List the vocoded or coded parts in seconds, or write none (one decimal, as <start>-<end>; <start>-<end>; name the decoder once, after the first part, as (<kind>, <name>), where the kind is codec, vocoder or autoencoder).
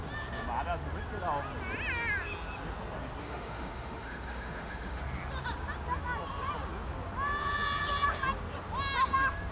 3.2-5.0 (autoencoder, DAC-VAE)